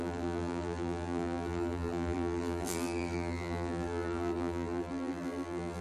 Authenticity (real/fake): fake